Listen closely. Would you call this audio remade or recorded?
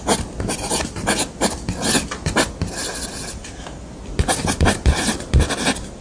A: recorded